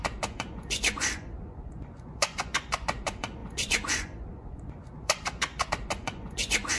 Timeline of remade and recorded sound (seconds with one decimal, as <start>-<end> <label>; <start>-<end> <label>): 0.0-6.8 remade